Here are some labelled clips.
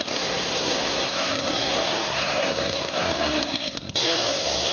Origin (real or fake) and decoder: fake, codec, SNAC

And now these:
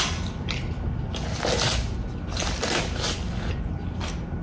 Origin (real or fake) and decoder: real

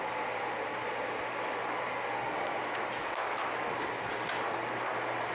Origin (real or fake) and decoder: real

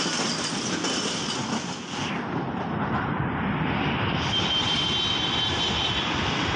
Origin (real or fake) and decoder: real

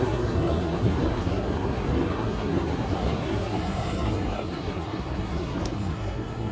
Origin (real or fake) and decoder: fake, codec, SNAC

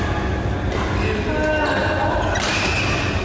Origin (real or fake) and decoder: real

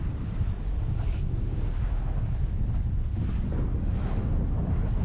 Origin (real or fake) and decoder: real